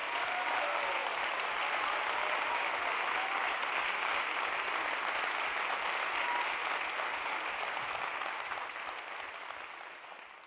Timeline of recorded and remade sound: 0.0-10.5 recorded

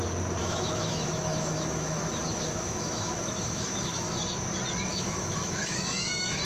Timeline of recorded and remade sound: 0.0-0.4 recorded; 0.4-4.2 remade; 4.2-4.9 recorded; 4.9-6.4 remade

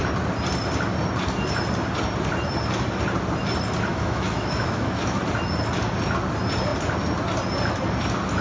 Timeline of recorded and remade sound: 0.0-3.9 recorded; 3.9-5.2 remade; 5.2-8.4 recorded

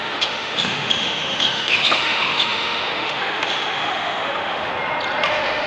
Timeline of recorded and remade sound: 0.0-4.7 remade; 4.7-5.3 recorded; 5.3-5.7 remade

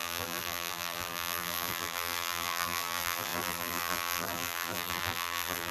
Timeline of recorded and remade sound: 0.0-5.7 remade

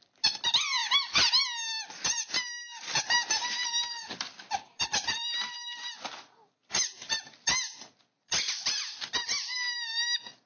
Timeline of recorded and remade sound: 0.0-10.5 recorded